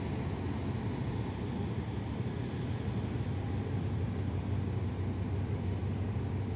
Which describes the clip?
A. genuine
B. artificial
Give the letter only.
A